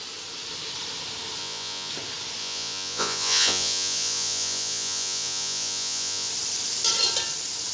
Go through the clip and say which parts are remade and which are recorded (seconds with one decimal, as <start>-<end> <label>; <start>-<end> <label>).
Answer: 0.0-1.4 recorded; 1.4-1.9 remade; 1.9-2.4 recorded; 2.4-6.3 remade; 6.3-7.7 recorded